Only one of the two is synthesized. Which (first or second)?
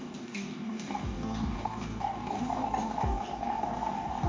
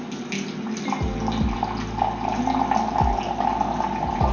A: first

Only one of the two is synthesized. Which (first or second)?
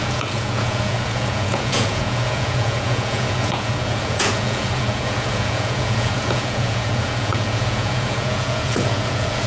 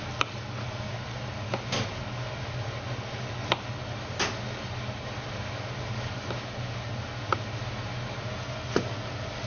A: first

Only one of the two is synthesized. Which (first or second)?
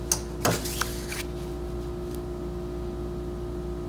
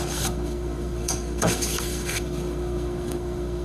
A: second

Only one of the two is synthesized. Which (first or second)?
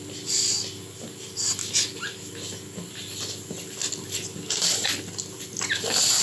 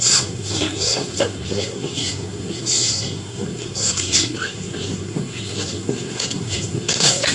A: second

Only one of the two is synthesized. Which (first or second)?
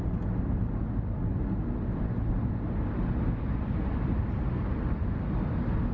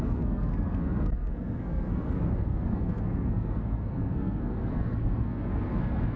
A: second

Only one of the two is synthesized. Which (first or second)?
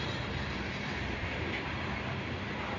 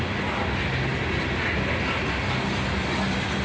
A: first